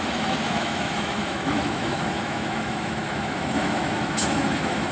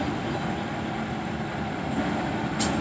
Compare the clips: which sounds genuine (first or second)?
second